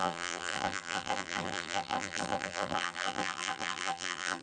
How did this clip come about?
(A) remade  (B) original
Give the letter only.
A